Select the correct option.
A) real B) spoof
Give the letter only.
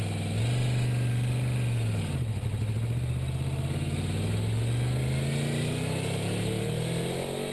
A